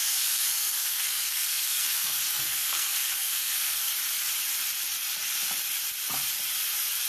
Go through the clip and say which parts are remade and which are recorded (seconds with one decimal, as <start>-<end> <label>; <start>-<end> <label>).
0.0-3.9 remade; 3.9-7.1 recorded